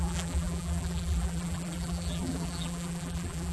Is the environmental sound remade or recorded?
remade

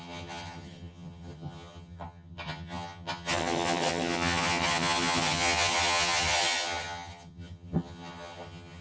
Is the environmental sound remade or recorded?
remade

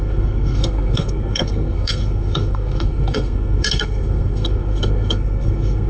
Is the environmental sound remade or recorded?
remade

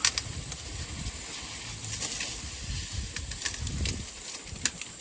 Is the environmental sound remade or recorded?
recorded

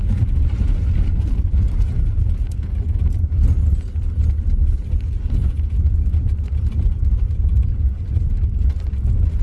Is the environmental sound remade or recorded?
recorded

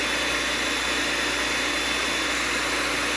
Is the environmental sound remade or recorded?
recorded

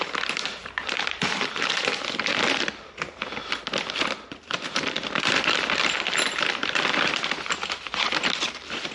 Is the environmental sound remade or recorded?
remade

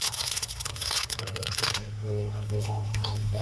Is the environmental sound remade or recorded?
remade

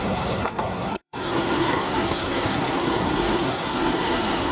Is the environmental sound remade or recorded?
remade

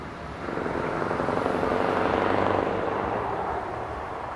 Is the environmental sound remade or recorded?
remade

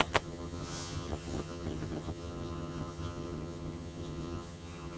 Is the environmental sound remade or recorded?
remade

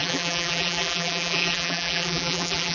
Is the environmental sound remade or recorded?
remade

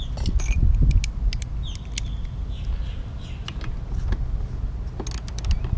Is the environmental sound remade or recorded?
recorded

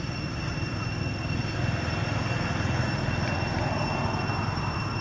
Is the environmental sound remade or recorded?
recorded